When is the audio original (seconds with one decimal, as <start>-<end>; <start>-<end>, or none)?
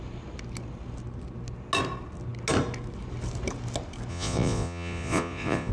0.0-4.1